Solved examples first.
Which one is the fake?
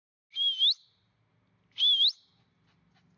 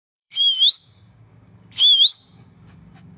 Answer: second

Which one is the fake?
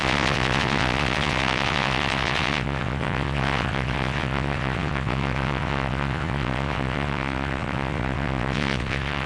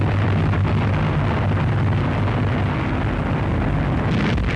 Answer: first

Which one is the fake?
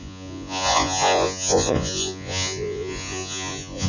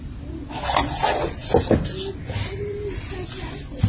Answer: first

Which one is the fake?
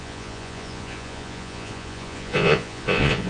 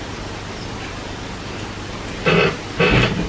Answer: first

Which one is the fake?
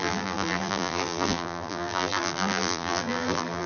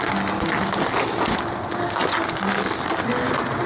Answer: first